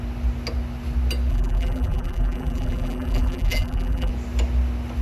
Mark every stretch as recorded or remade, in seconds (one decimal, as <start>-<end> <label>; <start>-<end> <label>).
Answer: 0.0-1.3 recorded; 1.3-4.1 remade; 4.1-5.0 recorded